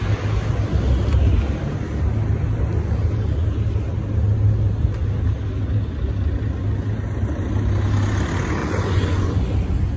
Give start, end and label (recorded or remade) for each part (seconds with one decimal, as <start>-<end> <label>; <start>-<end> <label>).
0.0-8.6 recorded; 8.6-9.3 remade; 9.3-10.0 recorded